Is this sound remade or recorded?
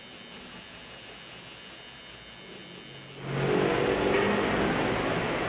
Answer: recorded